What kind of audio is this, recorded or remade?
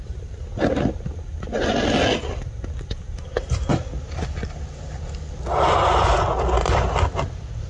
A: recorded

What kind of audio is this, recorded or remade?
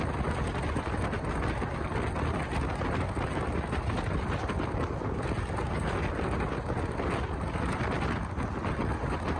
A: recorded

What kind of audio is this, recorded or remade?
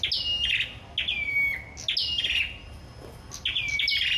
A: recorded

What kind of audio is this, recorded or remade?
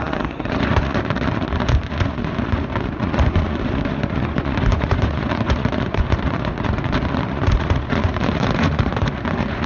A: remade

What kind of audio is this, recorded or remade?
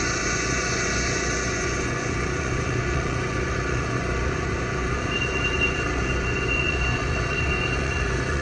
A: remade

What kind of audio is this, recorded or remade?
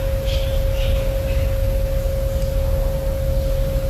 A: recorded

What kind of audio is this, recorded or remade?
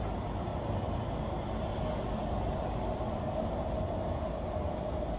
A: recorded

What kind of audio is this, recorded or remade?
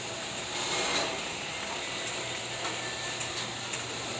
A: recorded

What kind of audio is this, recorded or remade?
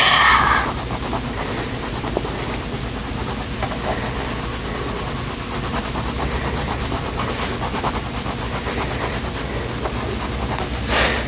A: recorded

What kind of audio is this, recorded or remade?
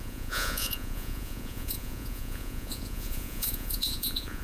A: remade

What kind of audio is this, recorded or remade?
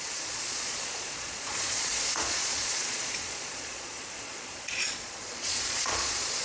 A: remade